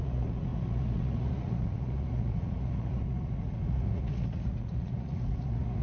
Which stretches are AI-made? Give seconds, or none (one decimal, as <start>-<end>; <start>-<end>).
0.0-5.8